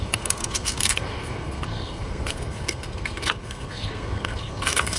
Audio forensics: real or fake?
fake